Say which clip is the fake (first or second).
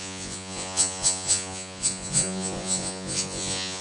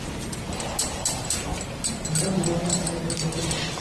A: first